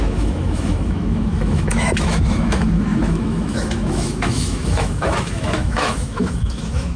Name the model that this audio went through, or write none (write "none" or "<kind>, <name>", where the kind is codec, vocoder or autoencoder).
autoencoder, DAC-VAE